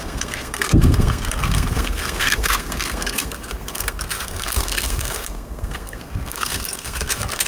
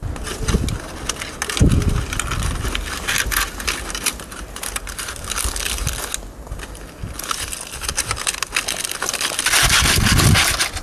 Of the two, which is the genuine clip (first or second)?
second